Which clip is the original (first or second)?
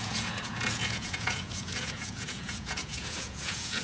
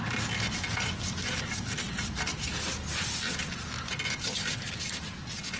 second